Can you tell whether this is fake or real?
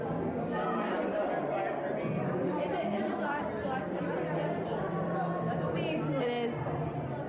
real